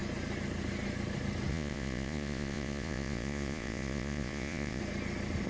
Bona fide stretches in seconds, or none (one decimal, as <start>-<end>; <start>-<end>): 0.0-1.5; 4.8-5.5